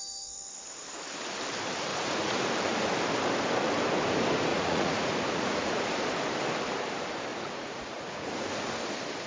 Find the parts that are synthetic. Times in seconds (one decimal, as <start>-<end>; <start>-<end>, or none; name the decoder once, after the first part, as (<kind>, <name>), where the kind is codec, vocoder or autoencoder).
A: 1.9-2.5 (vocoder, Vocos); 4.5-5.9; 7.3-8.8